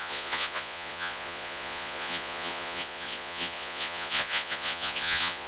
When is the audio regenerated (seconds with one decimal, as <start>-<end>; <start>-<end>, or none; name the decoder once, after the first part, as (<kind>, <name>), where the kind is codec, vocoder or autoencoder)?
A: 0.0-5.5 (vocoder, Vocos)